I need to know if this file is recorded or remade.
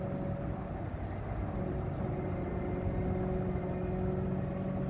recorded